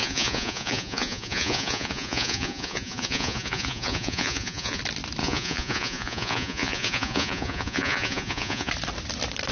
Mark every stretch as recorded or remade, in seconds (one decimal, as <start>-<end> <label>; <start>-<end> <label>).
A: 0.0-4.8 remade; 4.8-5.2 recorded; 5.2-8.7 remade; 8.7-9.5 recorded